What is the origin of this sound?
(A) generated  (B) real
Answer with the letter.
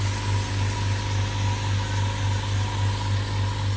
B